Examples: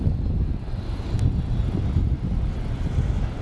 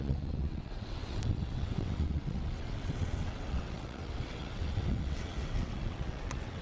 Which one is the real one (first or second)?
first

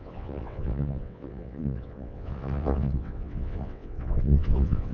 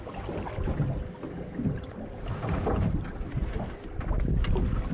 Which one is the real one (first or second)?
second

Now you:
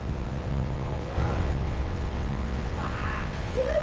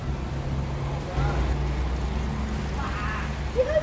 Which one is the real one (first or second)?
second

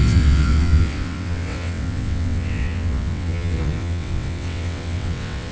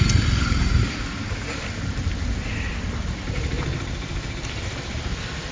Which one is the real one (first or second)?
second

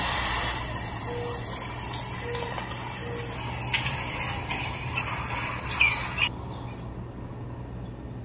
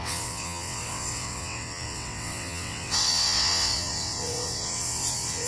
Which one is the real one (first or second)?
first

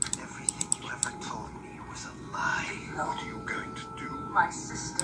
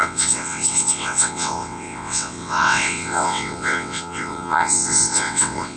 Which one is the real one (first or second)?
first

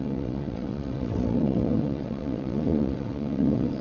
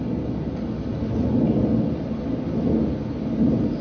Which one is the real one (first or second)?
second